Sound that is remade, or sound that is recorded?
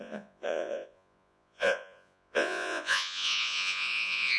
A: remade